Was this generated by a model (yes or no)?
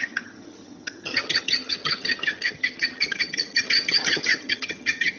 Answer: yes